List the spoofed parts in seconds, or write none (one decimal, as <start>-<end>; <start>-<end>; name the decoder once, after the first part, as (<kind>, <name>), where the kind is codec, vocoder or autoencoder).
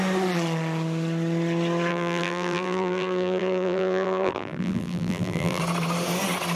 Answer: 1.9-5.6 (vocoder, BigVGAN v2)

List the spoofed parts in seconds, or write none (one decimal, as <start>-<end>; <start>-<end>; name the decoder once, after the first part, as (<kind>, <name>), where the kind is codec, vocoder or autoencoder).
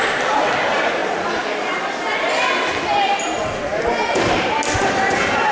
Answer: 0.0-1.0 (vocoder, BigVGAN v2); 2.1-3.7; 4.5-5.5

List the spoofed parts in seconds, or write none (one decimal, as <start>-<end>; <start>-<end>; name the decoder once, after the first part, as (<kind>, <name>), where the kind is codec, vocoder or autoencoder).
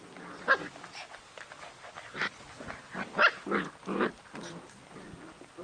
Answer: none